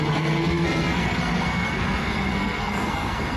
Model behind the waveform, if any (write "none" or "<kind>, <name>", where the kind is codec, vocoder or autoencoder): codec, SNAC